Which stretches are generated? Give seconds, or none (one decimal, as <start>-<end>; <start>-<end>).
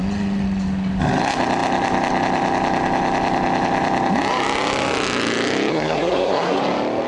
5.7-6.6